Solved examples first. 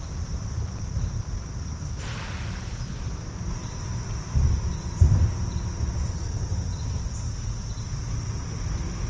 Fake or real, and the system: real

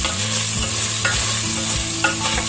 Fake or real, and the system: real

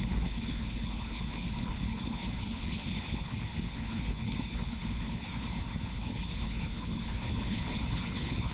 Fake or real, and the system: fake, codec, HILCodec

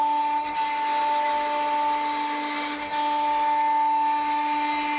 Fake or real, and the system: real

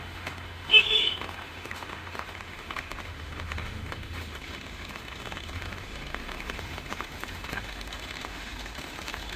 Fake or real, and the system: fake, autoencoder, DAC-VAE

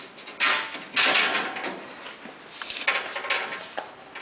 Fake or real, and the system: real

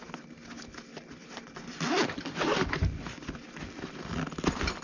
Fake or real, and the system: real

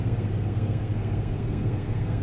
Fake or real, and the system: fake, codec, SNAC